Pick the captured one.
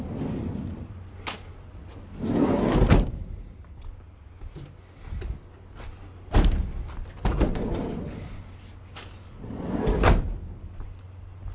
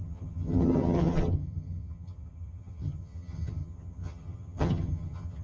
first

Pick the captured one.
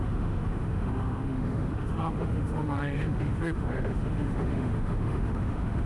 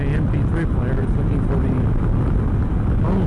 second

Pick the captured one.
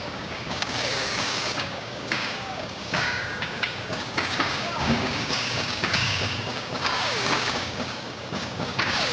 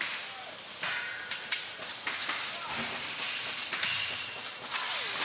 second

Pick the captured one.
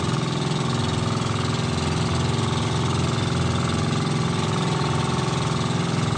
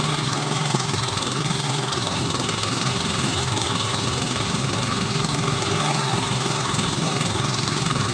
first